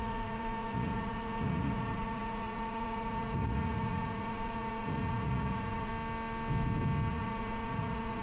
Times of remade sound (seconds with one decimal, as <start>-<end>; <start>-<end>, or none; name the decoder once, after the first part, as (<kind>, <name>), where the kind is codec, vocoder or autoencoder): 0.0-5.9 (vocoder, Vocos); 7.1-8.2

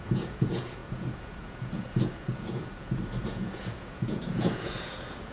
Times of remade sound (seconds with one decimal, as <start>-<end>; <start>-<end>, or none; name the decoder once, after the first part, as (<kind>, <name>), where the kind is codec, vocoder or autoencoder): 0.0-5.3 (vocoder, Vocos)

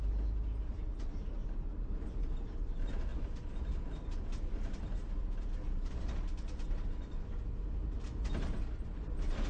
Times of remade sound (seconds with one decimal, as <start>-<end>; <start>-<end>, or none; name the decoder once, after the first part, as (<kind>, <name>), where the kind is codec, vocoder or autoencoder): none

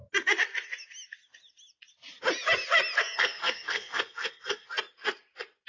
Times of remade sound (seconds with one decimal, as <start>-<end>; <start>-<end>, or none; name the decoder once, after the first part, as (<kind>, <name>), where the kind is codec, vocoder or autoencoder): 3.0-4.7 (codec, SNAC)

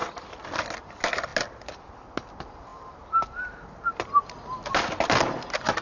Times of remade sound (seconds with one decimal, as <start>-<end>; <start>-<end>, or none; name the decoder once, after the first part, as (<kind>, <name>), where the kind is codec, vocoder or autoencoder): 2.7-4.3 (vocoder, BigVGAN v2)

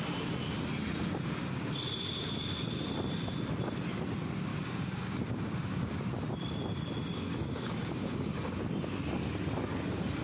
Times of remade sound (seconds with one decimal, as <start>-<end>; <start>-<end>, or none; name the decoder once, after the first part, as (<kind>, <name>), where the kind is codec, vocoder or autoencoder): 4.5-6.0 (codec, DAC); 7.1-8.5

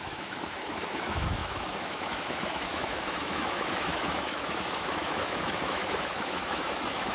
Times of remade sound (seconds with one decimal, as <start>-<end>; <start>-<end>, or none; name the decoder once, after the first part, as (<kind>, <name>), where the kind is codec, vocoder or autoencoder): 0.0-7.1 (autoencoder, DAC-VAE)

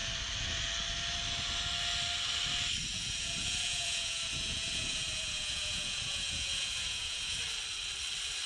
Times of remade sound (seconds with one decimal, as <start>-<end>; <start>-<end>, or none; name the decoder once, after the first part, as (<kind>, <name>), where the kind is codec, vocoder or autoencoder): 2.9-7.4 (vocoder, Vocos)